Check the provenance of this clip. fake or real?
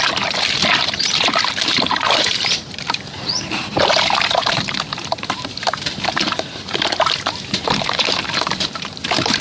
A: fake